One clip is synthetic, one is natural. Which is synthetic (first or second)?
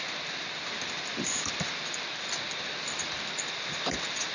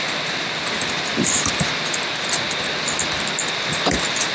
first